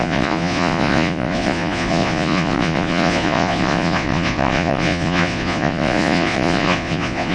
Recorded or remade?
remade